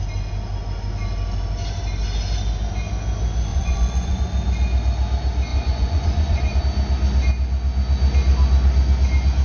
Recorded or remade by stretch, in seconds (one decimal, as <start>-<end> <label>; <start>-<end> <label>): 0.0-3.5 recorded; 3.5-4.2 remade; 4.2-5.5 recorded; 5.5-6.6 remade; 6.6-9.4 recorded